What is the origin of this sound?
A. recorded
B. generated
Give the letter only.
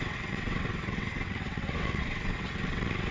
B